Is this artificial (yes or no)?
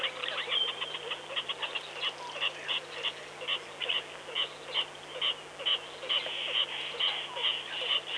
no